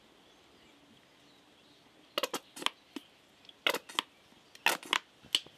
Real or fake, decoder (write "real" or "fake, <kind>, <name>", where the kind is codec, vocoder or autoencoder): real